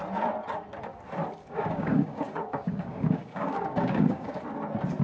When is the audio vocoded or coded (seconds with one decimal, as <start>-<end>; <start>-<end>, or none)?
1.4-4.4